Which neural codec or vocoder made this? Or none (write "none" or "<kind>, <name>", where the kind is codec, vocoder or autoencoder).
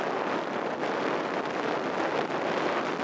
none